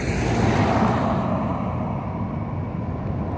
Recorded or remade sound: recorded